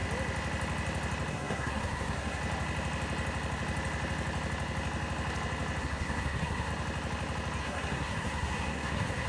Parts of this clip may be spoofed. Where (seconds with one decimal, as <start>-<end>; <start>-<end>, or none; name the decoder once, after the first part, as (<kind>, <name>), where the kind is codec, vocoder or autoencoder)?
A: 1.3-2.4 (codec, SNAC); 5.8-6.7; 7.6-9.3